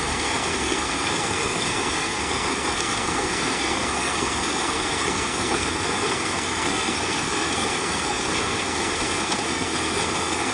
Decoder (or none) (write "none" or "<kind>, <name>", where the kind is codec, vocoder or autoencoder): codec, SNAC